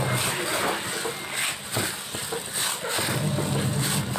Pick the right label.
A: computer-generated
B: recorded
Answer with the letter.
B